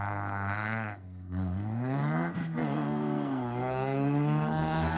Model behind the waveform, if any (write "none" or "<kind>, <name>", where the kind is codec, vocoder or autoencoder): codec, SNAC